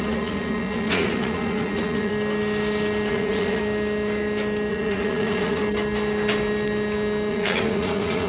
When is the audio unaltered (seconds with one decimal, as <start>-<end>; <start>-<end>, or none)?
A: 2.1-3.1; 3.6-4.7; 5.6-7.3